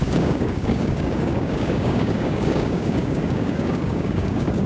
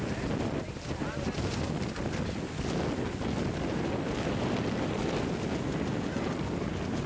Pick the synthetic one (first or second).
first